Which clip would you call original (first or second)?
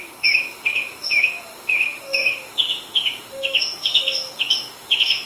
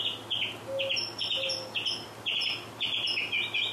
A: second